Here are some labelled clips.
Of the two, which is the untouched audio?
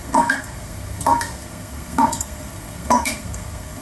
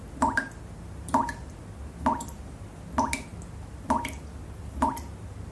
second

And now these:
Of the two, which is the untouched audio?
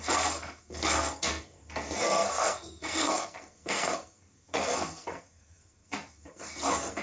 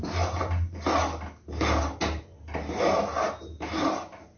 second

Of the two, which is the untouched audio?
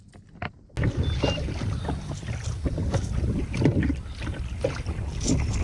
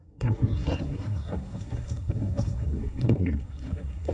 first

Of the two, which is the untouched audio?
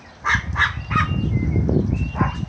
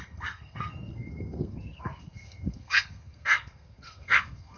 first